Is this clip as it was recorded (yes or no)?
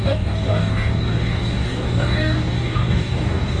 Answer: no